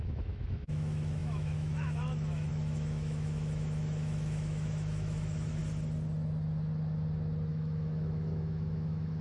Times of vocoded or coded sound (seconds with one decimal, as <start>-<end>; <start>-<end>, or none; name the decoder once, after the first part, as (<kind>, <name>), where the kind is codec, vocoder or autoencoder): 0.0-5.6 (autoencoder, DAC-VAE); 7.5-9.2